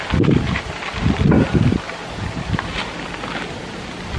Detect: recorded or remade recorded